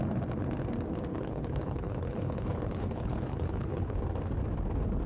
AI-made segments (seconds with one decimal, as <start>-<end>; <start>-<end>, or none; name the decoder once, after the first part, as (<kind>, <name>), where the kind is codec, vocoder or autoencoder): 1.1-4.0 (codec, HILCodec)